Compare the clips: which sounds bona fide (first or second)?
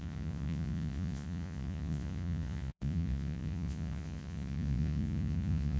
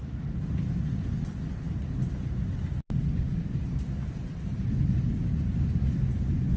second